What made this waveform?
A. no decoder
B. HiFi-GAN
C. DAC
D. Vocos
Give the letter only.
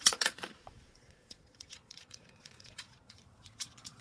D